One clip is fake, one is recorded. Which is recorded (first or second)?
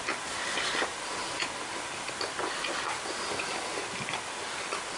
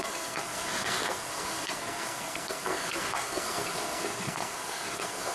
first